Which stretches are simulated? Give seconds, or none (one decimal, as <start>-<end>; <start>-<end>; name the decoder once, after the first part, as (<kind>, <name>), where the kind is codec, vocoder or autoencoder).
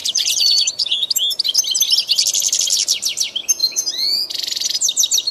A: 0.0-1.1 (vocoder, Vocos); 3.6-4.2